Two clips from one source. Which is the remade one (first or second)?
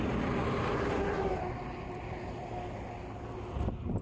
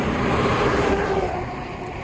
second